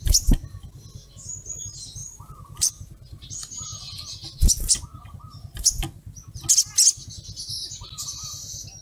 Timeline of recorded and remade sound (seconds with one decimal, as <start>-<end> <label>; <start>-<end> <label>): 0.0-2.0 recorded; 2.0-3.3 remade; 3.3-8.8 recorded

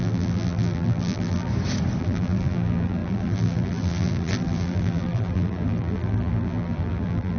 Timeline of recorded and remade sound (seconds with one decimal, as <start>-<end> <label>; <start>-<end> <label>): 0.0-1.5 remade; 1.5-2.0 recorded; 2.0-7.4 remade